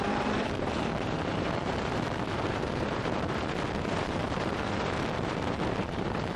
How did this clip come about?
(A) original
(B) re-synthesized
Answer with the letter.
B